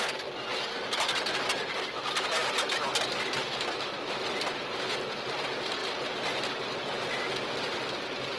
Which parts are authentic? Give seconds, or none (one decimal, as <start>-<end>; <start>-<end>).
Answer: 0.0-8.4